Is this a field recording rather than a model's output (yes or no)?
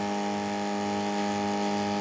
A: yes